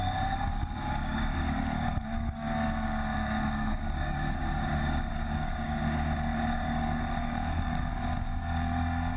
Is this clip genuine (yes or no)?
no